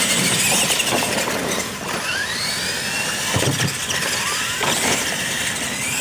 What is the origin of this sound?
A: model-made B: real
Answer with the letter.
B